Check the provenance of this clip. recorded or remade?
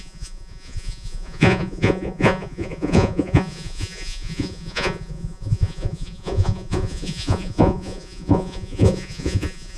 remade